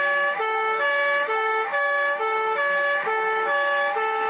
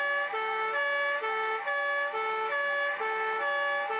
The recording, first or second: second